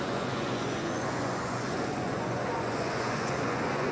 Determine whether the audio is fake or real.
fake